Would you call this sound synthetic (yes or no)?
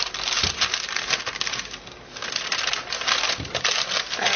no